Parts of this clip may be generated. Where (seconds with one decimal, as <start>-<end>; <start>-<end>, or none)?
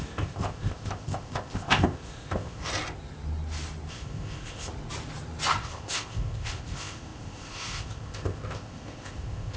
0.0-2.7; 3.9-4.7; 5.6-9.6